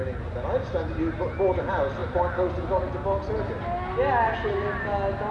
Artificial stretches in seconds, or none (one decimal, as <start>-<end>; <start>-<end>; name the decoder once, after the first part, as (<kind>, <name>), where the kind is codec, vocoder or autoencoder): none